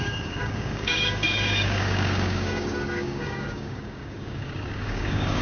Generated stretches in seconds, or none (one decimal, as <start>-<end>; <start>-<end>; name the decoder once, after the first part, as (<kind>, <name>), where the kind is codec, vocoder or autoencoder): 0.0-5.4 (codec, DAC)